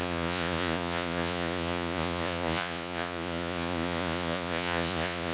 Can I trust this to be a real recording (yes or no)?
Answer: no